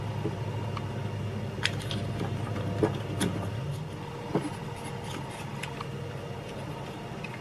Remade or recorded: recorded